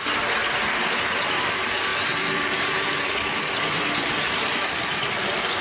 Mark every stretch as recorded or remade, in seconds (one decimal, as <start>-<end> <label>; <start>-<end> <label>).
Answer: 0.0-5.6 recorded